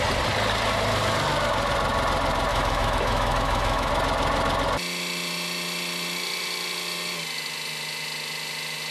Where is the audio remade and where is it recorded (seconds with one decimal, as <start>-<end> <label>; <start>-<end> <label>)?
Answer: 0.0-2.5 recorded; 2.5-3.9 remade; 3.9-8.9 recorded